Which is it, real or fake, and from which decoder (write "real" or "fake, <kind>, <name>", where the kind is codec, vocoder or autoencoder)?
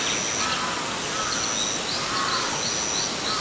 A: real